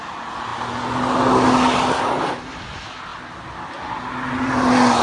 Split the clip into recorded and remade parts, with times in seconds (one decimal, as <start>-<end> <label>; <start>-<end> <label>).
0.0-5.0 recorded